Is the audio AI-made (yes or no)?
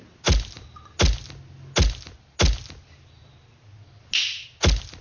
no